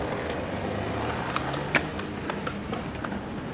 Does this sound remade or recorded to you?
recorded